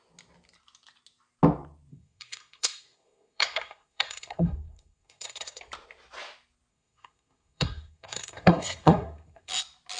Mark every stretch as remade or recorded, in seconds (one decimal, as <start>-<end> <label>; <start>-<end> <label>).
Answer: 0.0-1.9 recorded; 1.9-5.6 remade; 5.6-6.7 recorded; 6.7-9.5 remade; 9.5-10.0 recorded